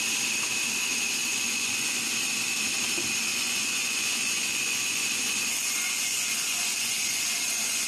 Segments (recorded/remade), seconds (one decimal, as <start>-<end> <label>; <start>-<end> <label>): 0.0-1.2 recorded; 1.2-2.0 remade; 2.0-3.3 recorded; 3.3-7.9 remade